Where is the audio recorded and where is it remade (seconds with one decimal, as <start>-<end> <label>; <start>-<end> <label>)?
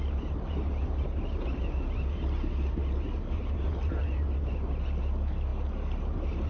0.0-6.5 recorded